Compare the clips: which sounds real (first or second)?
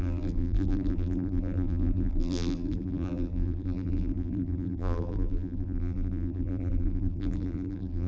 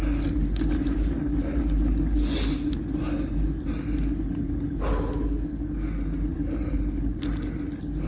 second